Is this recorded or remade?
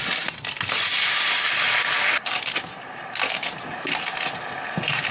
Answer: recorded